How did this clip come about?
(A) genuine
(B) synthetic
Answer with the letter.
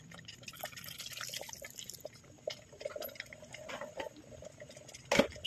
A